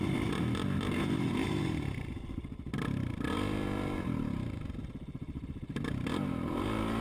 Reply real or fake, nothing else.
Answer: fake